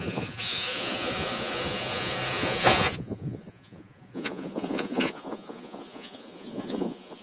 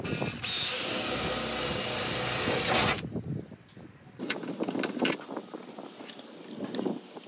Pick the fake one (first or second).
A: first